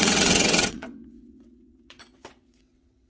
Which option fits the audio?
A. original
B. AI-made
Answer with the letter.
B